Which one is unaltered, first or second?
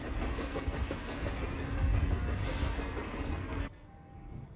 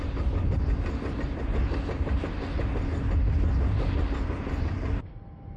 second